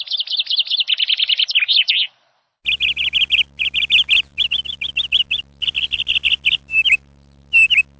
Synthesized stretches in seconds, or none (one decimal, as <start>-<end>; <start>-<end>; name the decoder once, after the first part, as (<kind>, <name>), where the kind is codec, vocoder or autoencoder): 4.3-7.4 (vocoder, BigVGAN v2)